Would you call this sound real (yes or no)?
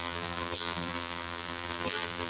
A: no